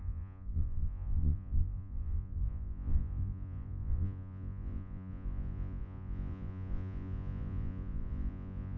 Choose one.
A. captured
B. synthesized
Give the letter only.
B